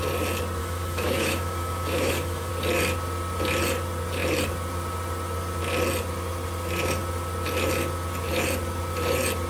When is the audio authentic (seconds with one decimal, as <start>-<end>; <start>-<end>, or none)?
0.0-0.6; 2.5-9.5